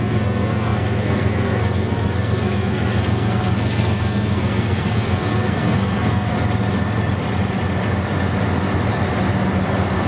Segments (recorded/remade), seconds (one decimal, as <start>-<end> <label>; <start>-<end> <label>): 0.0-6.3 remade; 6.3-10.1 recorded